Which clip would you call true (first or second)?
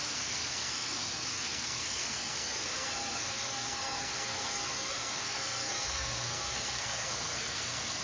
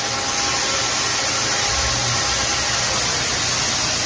second